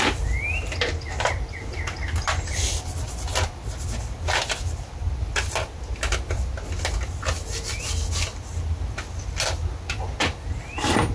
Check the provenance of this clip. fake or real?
real